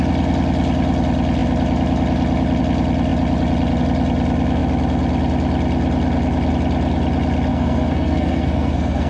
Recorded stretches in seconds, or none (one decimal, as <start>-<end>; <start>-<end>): 0.0-7.5